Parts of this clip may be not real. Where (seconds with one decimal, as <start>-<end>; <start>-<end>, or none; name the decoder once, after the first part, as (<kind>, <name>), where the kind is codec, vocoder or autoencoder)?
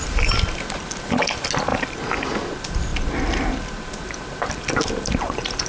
none